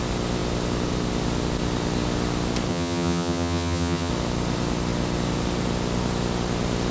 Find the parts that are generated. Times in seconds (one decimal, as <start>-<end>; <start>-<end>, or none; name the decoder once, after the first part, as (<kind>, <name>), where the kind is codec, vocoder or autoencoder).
2.7-4.1 (vocoder, HiFi-GAN)

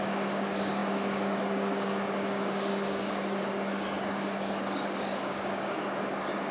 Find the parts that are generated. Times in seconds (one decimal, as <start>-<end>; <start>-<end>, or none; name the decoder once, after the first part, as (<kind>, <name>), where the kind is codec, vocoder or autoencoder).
0.0-6.5 (codec, DAC)